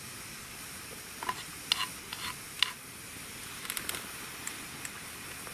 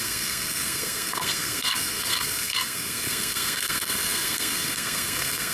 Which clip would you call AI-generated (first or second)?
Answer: second